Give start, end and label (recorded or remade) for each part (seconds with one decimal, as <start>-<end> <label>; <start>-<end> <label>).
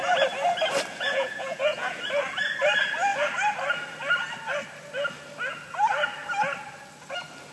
0.0-0.9 recorded; 0.9-2.0 remade; 2.0-7.5 recorded